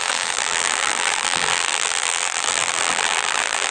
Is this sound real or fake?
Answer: fake